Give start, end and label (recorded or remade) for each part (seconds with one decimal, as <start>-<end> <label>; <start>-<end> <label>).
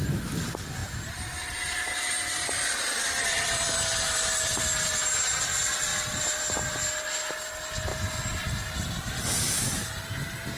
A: 0.0-0.8 recorded; 0.8-4.9 remade; 4.9-10.6 recorded